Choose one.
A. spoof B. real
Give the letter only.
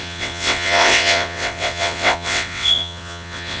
A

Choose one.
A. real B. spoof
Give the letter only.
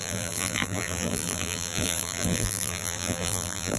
B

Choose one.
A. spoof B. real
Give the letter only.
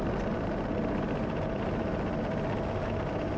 B